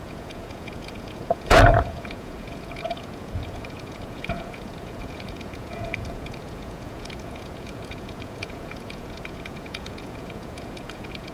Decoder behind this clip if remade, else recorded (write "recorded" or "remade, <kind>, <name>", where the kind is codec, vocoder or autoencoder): remade, vocoder, Vocos